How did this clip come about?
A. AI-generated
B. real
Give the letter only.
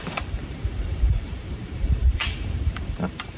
A